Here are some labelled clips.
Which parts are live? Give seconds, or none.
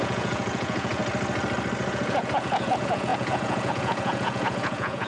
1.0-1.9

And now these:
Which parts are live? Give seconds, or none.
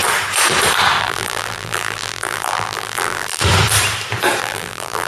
0.0-1.0; 3.4-4.4